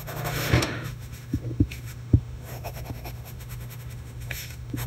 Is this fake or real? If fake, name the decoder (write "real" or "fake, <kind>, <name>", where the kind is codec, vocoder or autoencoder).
fake, autoencoder, DAC-VAE